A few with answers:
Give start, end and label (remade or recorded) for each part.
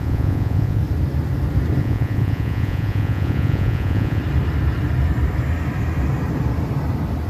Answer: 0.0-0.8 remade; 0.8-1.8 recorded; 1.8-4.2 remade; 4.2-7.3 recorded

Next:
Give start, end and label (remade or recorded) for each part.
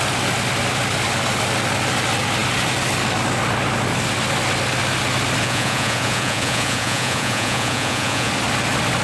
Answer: 0.0-5.4 recorded; 5.4-8.3 remade; 8.3-9.0 recorded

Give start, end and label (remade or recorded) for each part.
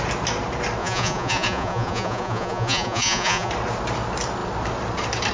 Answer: 0.0-0.8 recorded; 0.8-3.5 remade; 3.5-5.3 recorded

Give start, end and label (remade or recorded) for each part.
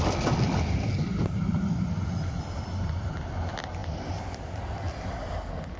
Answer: 0.0-5.8 recorded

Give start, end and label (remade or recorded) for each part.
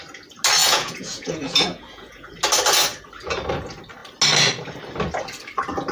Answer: 0.0-0.6 recorded; 0.6-2.3 remade; 2.3-5.9 recorded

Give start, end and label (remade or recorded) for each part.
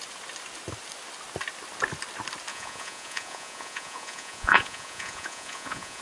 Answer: 0.0-2.5 recorded; 2.5-6.0 remade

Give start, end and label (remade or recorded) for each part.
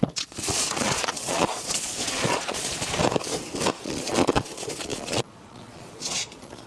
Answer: 0.0-3.0 remade; 3.0-3.8 recorded; 3.8-6.7 remade